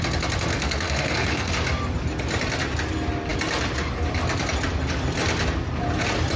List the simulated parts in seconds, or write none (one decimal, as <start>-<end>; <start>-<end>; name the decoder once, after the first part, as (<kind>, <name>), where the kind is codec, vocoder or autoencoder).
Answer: 0.5-1.5 (codec, SNAC)